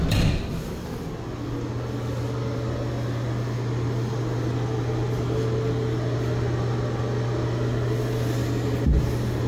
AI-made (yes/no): no